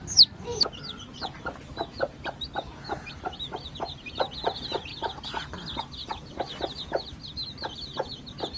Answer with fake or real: real